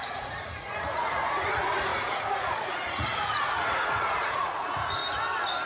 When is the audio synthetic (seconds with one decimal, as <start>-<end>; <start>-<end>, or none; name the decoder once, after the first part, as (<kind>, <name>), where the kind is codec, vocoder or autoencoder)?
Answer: 0.0-5.0 (vocoder, Vocos)